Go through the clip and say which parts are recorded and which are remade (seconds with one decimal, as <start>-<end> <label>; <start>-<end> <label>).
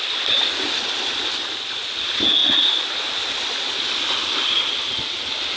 0.0-5.6 recorded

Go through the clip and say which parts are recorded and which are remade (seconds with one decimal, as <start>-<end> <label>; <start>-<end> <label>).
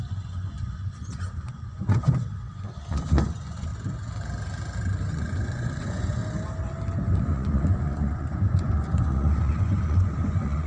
0.0-3.7 remade; 3.7-5.1 recorded; 5.1-6.2 remade; 6.2-7.2 recorded; 7.2-10.7 remade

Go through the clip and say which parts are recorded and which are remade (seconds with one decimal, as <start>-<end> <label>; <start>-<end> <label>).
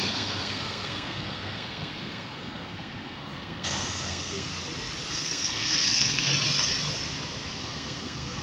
0.0-4.5 remade; 4.5-5.1 recorded; 5.1-6.3 remade; 6.3-7.6 recorded; 7.6-8.4 remade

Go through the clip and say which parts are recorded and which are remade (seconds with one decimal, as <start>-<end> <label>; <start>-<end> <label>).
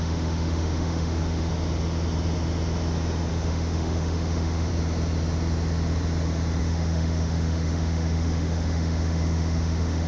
0.0-1.5 remade; 1.5-3.3 recorded; 3.3-4.7 remade; 4.7-6.6 recorded; 6.6-10.1 remade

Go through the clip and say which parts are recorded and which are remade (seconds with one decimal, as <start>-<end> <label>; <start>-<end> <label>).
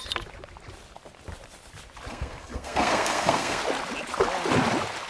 0.0-2.1 recorded; 2.1-3.6 remade; 3.6-5.1 recorded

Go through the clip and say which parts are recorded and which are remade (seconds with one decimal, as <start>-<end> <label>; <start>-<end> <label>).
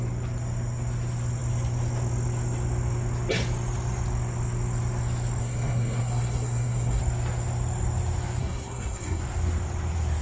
0.0-5.4 recorded; 5.4-7.0 remade; 7.0-8.4 recorded; 8.4-9.2 remade; 9.2-10.2 recorded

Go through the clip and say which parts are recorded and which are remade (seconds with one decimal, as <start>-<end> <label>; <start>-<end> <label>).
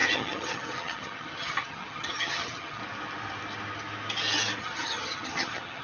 0.0-2.8 remade; 2.8-4.6 recorded; 4.6-5.8 remade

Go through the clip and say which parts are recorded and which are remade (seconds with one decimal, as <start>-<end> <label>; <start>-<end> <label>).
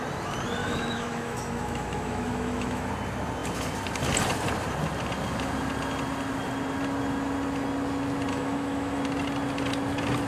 0.0-0.6 recorded; 0.6-2.9 remade; 2.9-8.3 recorded; 8.3-9.0 remade; 9.0-10.3 recorded